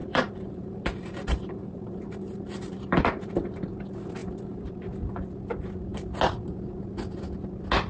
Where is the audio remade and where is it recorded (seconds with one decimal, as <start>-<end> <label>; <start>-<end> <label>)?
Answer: 0.0-3.6 remade; 3.6-4.2 recorded; 4.2-4.7 remade; 4.7-7.9 recorded

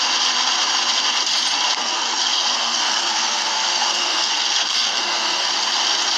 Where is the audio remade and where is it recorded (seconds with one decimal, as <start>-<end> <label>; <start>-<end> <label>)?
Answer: 0.0-1.8 recorded; 1.8-5.5 remade; 5.5-6.2 recorded

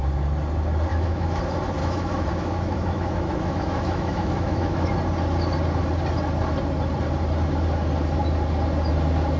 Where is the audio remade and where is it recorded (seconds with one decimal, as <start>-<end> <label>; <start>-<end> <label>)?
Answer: 0.0-0.9 recorded; 0.9-1.4 remade; 1.4-1.8 recorded; 1.8-4.9 remade; 4.9-9.4 recorded

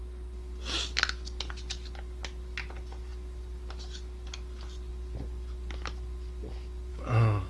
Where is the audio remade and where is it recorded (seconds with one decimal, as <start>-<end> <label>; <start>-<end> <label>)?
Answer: 0.0-6.9 recorded; 6.9-7.5 remade

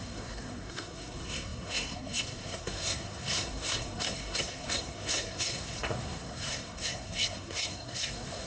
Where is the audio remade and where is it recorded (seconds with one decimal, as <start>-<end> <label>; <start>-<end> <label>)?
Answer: 0.0-8.5 remade